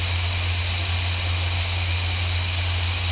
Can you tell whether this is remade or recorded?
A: recorded